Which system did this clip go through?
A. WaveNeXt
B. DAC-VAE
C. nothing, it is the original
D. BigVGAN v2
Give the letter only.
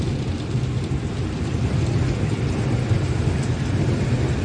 C